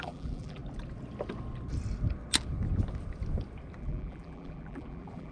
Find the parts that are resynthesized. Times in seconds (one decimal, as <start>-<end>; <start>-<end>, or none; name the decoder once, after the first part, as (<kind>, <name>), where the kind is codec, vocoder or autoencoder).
0.0-0.6 (vocoder, BigVGAN v2); 3.8-5.3

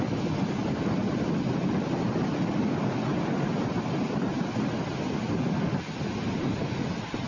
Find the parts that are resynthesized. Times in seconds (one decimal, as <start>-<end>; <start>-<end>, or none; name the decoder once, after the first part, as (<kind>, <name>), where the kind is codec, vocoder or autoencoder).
none